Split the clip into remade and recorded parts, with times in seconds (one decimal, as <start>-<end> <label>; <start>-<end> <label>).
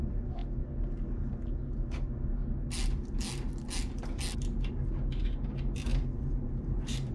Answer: 0.0-5.9 recorded; 5.9-7.1 remade